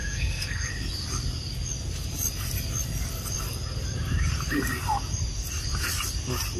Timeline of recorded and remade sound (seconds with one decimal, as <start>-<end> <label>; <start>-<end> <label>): 0.0-0.7 remade; 0.7-6.6 recorded